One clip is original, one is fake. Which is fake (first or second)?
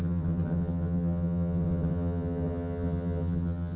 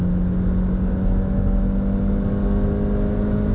first